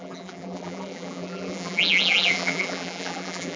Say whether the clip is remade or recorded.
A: remade